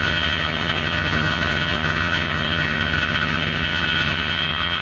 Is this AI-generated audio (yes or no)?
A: yes